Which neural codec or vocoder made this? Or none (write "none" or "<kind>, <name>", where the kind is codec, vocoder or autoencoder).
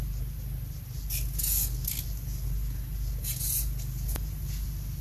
none